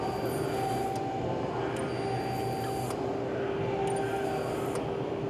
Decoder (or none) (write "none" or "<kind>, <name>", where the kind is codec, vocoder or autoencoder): none